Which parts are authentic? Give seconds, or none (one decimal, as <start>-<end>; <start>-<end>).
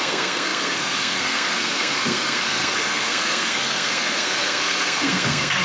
none